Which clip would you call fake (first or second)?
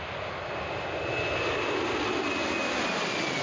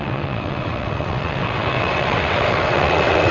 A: second